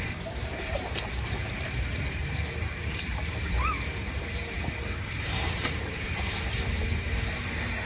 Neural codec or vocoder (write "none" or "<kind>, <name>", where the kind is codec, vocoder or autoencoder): vocoder, BigVGAN v2